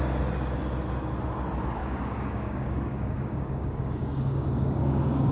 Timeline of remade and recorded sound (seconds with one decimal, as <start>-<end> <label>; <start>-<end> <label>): 0.0-1.8 recorded; 1.8-5.3 remade